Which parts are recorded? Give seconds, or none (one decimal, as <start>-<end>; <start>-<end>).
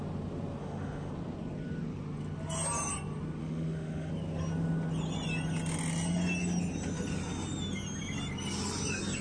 0.0-0.6; 1.1-3.4; 4.1-9.2